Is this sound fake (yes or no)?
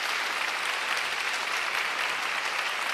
no